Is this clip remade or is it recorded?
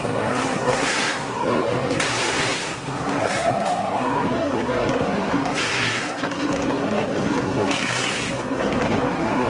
remade